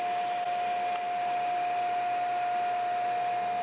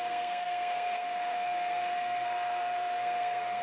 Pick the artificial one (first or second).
second